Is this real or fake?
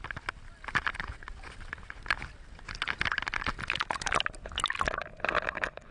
real